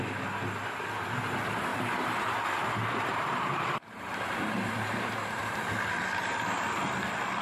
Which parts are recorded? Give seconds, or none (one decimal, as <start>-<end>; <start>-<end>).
0.0-1.7; 5.7-7.4